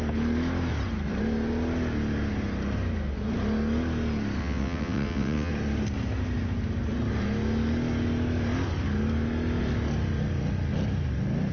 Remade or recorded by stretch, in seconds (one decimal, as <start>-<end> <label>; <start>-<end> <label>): 0.0-4.4 recorded; 4.4-5.5 remade; 5.5-11.5 recorded